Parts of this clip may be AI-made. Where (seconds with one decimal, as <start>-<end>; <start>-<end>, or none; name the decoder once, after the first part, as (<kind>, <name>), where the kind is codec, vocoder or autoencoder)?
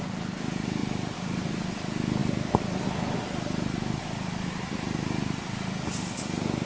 none